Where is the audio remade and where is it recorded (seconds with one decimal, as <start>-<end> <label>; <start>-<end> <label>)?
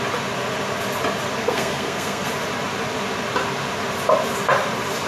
0.0-1.4 recorded; 1.4-2.3 remade; 2.3-5.1 recorded